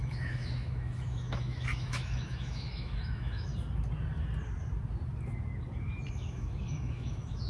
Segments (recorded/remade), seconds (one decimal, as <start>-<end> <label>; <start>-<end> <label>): 0.0-3.5 remade; 3.5-6.1 recorded; 6.1-7.5 remade